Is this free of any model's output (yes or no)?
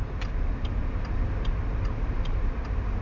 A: yes